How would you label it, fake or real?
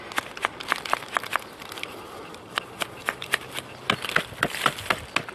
real